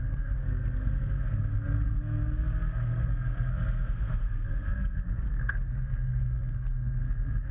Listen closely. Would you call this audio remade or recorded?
remade